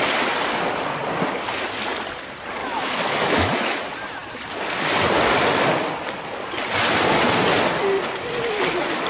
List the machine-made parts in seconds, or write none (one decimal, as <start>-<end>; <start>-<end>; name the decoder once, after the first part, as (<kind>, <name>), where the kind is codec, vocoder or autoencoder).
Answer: 2.6-3.8 (autoencoder, DAC-VAE)